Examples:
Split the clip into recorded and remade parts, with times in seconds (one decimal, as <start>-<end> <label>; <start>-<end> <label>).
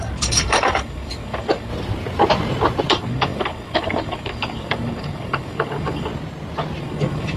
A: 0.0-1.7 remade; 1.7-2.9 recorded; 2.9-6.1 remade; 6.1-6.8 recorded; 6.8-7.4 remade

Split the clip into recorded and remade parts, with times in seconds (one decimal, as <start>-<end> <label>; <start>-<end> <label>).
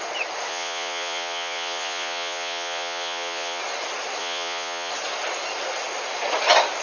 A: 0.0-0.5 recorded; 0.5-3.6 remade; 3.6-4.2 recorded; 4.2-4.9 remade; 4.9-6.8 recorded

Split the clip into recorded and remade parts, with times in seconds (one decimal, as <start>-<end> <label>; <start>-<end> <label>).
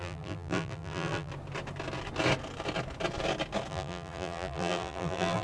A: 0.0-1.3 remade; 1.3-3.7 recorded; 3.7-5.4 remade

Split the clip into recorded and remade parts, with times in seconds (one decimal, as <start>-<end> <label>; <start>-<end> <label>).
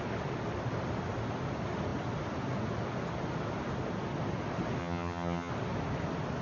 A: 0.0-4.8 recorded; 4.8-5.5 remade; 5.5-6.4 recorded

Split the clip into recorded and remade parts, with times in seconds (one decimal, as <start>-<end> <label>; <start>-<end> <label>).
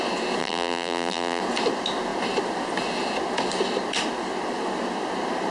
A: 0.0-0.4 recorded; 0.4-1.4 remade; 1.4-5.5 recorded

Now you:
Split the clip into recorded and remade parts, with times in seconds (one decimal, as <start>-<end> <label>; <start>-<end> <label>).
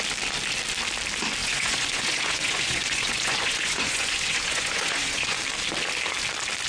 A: 0.0-1.4 recorded; 1.4-5.4 remade; 5.4-6.7 recorded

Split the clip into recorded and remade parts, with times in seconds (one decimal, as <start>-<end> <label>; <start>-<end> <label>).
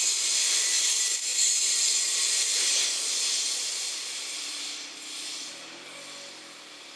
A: 0.0-1.3 recorded; 1.3-5.5 remade; 5.5-7.0 recorded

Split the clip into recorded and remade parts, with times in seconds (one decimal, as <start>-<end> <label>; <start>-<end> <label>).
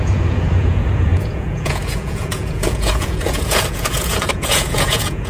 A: 0.0-5.3 remade